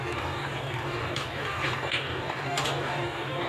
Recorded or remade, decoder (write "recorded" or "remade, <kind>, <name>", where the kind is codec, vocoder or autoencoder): remade, codec, DAC